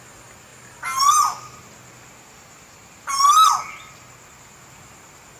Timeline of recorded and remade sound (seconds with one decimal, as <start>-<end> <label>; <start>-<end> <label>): 0.0-5.4 recorded